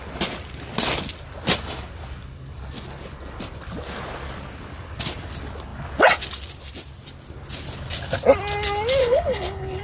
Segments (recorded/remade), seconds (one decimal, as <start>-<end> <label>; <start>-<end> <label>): 0.0-9.0 recorded; 9.0-9.8 remade